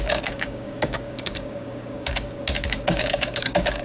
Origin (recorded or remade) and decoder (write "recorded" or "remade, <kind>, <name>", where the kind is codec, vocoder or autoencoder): remade, codec, DAC